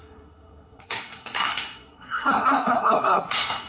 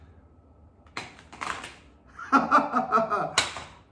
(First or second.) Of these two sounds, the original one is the second